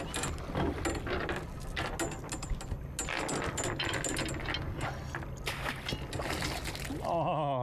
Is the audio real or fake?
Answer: real